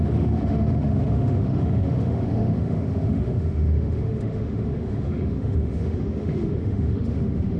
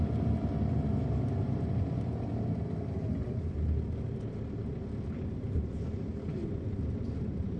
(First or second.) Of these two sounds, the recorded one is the second